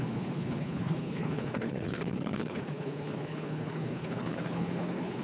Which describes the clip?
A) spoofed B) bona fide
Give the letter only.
A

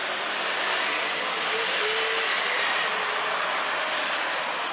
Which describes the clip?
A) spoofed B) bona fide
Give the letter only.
B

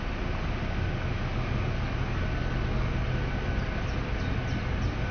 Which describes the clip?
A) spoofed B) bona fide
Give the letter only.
B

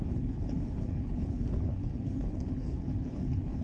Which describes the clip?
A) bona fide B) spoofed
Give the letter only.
B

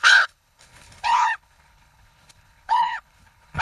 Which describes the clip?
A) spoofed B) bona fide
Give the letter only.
A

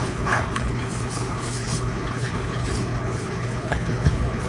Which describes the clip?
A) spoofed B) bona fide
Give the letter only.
A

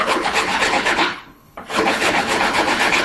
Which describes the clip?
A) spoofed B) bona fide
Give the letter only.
A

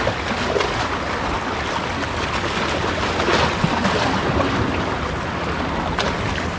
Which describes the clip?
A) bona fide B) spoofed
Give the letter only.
A